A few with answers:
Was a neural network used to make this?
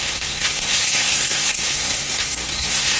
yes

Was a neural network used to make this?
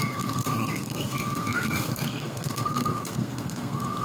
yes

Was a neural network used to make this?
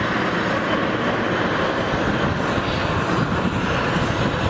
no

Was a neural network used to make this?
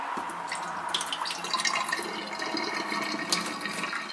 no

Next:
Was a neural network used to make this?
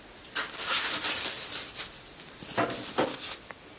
no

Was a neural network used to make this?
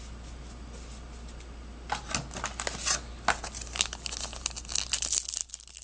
no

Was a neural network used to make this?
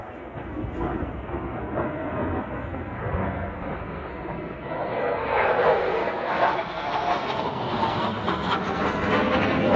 yes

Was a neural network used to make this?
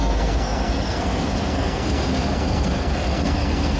yes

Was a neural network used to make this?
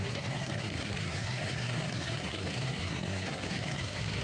yes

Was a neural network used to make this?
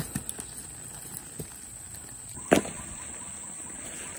no